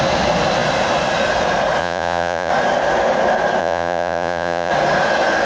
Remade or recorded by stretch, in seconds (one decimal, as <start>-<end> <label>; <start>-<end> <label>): 0.0-1.8 recorded; 1.8-2.5 remade; 2.5-3.6 recorded; 3.6-4.7 remade; 4.7-5.5 recorded